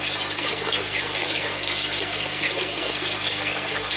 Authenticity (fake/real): fake